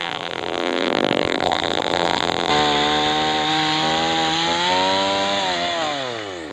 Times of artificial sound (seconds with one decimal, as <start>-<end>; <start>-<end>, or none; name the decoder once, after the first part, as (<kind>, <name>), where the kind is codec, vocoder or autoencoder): 0.0-2.5 (vocoder, BigVGAN v2)